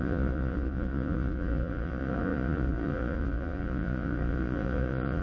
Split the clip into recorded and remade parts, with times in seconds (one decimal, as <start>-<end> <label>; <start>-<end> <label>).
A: 0.0-5.2 remade